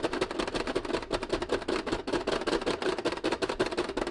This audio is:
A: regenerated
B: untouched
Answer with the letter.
B